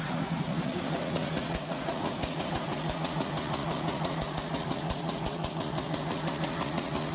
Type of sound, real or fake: fake